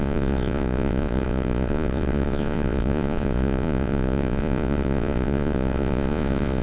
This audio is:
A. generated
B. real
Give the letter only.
A